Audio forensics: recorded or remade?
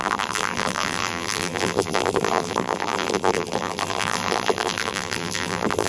remade